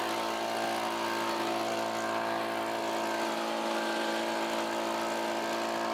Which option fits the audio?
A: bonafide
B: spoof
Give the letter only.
A